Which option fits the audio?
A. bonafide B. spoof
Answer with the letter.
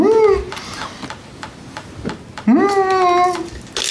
A